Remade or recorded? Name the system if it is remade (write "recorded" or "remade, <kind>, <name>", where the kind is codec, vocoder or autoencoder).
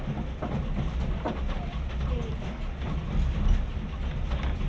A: recorded